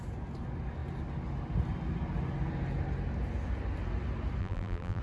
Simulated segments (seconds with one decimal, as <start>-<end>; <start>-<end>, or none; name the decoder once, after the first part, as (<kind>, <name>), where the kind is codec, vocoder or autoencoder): 4.4-5.0 (vocoder, BigVGAN v2)